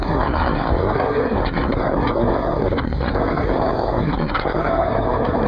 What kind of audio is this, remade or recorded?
remade